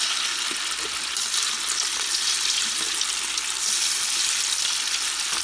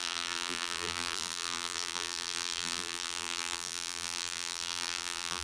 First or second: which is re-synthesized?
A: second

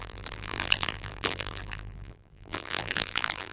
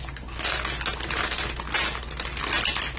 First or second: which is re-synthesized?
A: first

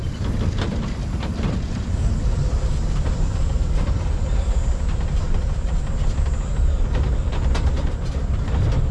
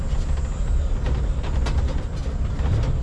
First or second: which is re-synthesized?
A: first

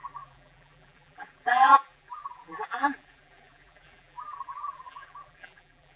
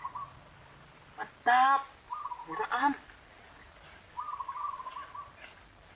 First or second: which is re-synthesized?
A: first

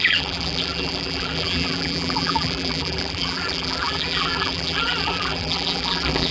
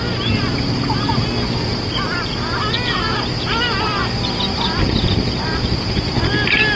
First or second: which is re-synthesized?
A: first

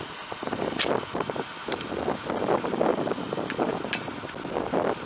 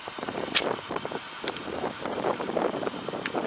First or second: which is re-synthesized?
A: second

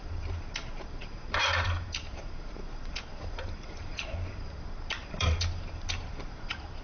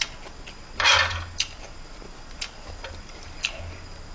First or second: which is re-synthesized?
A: first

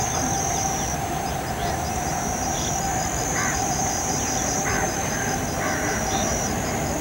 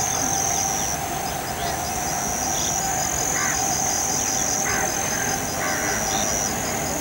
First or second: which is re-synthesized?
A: first